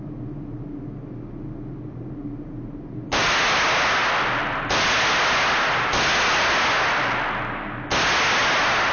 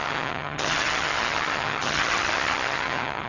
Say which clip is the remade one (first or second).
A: second